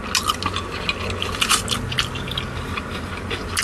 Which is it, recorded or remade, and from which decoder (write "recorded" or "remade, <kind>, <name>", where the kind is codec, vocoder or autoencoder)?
recorded